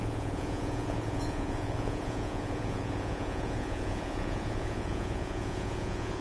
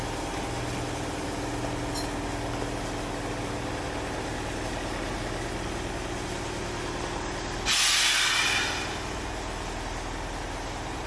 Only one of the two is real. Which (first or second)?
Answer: second